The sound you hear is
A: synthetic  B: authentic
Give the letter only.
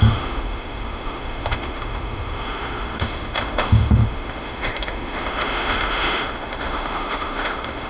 A